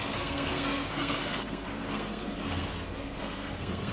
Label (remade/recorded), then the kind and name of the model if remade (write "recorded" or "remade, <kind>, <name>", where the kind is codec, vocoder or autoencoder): remade, codec, SNAC